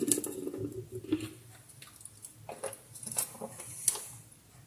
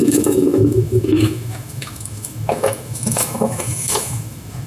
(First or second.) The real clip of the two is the first